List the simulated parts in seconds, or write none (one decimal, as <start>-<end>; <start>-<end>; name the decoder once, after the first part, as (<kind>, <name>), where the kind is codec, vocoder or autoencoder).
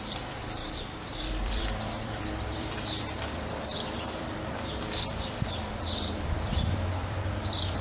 0.0-7.8 (vocoder, BigVGAN v2)